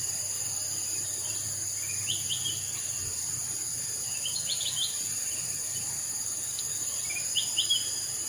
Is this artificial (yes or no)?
no